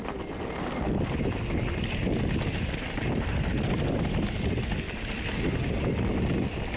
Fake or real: real